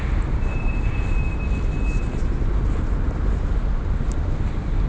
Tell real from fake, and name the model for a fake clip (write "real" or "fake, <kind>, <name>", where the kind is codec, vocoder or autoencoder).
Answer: real